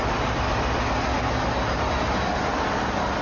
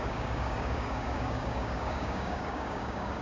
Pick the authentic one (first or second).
first